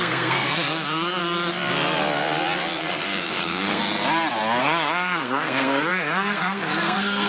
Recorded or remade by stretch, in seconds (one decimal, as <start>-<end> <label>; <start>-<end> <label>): 0.0-1.2 remade; 1.2-2.8 recorded; 2.8-3.8 remade; 3.8-4.6 recorded; 4.6-7.3 remade